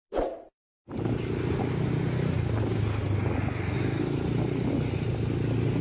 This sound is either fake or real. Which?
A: real